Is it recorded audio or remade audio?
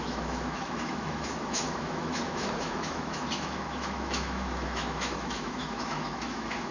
remade